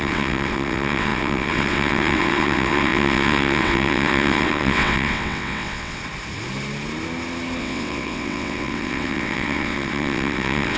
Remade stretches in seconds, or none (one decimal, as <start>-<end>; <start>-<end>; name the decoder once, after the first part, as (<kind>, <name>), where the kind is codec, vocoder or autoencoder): 0.0-6.0 (vocoder, WaveNeXt); 7.6-10.8